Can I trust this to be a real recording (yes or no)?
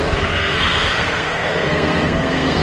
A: no